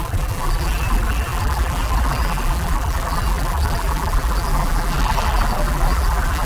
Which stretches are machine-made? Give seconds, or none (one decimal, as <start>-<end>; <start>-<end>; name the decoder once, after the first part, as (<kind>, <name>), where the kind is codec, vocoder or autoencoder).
0.0-6.5 (vocoder, BigVGAN v2)